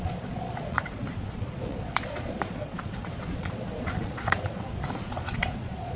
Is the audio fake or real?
fake